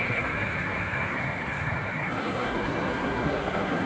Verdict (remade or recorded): remade